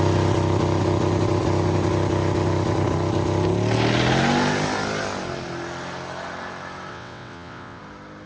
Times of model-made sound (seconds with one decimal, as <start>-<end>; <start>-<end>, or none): 6.9-7.8